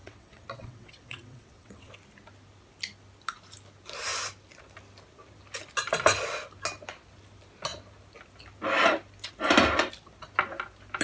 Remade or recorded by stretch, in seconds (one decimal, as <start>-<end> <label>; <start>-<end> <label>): 0.0-1.9 remade; 1.9-11.0 recorded